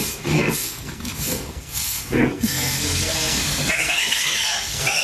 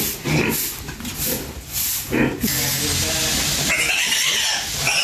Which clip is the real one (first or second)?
second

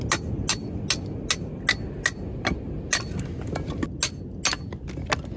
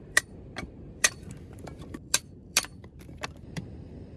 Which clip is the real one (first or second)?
first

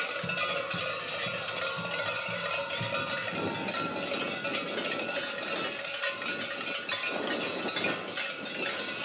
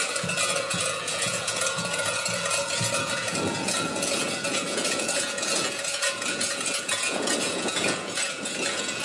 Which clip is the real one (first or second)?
first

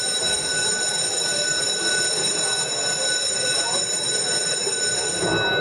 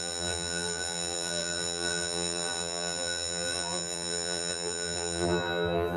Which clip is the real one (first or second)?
first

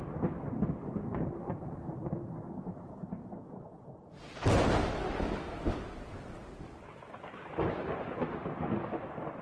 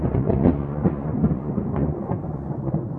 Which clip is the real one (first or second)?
first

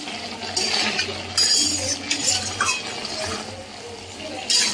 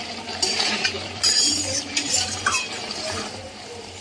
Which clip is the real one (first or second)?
first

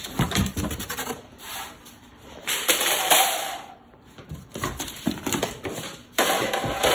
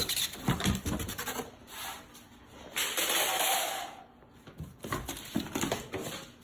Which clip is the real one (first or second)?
second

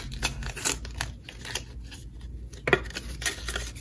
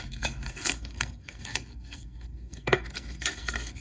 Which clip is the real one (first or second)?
first